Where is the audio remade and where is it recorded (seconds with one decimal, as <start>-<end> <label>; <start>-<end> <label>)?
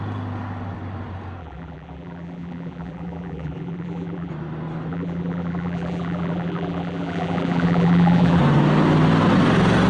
0.0-1.4 recorded; 1.4-4.3 remade; 4.3-4.9 recorded; 4.9-8.4 remade; 8.4-9.9 recorded